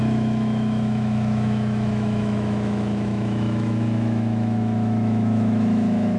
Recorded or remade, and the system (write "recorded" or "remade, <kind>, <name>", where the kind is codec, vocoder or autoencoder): remade, autoencoder, DAC-VAE